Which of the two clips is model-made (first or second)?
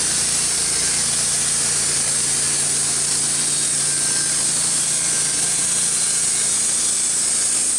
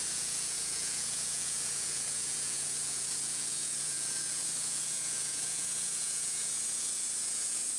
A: second